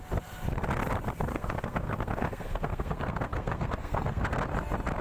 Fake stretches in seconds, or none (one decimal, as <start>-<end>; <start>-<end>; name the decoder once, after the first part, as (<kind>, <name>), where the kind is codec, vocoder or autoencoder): 1.3-4.3 (codec, SNAC)